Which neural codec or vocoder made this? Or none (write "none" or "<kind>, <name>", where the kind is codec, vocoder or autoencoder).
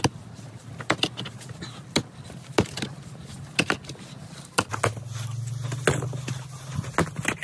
none